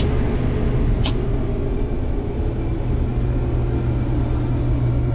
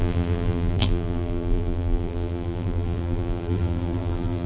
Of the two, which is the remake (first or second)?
second